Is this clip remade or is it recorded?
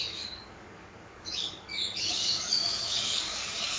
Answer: remade